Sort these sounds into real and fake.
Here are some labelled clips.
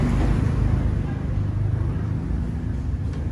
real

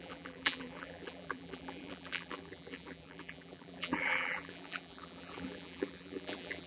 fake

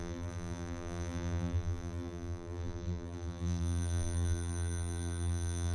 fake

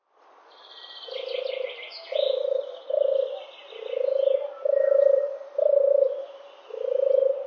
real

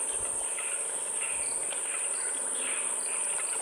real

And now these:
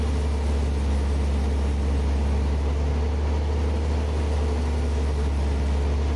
real